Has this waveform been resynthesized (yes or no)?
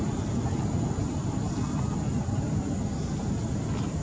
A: no